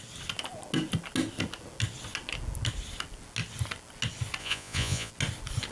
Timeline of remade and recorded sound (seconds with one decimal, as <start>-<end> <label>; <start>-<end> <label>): 0.0-4.4 recorded; 4.4-5.1 remade; 5.1-5.7 recorded